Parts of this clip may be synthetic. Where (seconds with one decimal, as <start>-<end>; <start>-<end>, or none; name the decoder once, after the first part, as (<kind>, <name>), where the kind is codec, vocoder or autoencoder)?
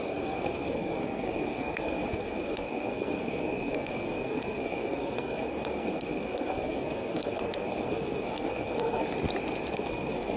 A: 0.0-9.0 (codec, SNAC); 9.7-10.4